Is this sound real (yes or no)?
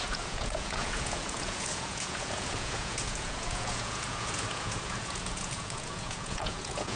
no